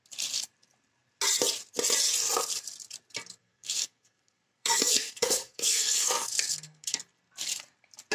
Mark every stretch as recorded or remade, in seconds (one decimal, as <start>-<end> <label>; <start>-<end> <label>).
0.0-3.4 recorded; 3.4-7.0 remade; 7.0-8.1 recorded